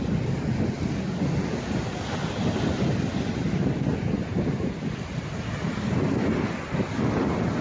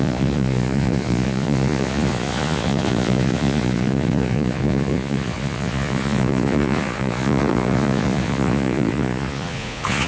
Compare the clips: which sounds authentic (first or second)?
first